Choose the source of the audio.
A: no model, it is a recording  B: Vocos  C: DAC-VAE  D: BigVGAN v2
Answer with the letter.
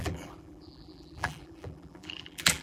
D